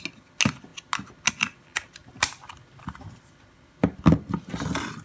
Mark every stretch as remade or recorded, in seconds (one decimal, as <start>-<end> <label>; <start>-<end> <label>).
0.0-2.0 recorded; 2.0-3.8 remade; 3.8-5.0 recorded